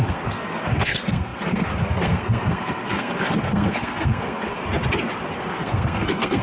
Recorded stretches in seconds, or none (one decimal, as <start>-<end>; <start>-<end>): 4.6-5.3